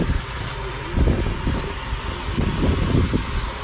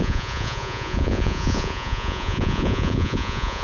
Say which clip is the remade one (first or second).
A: second